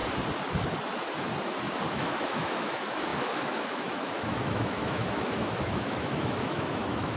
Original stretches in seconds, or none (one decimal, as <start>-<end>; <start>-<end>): 0.0-1.9